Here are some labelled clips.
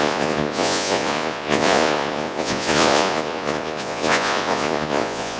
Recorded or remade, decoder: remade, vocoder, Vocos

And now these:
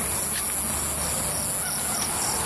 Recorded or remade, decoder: recorded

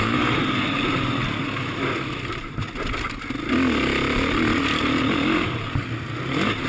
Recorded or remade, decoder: recorded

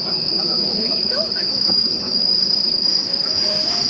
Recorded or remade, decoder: remade, autoencoder, DAC-VAE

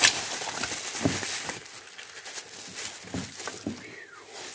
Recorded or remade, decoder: recorded